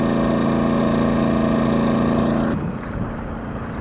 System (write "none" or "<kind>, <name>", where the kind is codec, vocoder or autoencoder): none